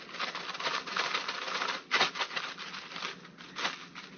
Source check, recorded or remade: recorded